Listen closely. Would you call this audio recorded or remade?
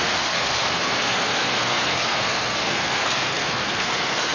remade